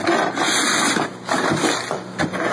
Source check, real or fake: real